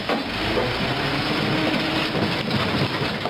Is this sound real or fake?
real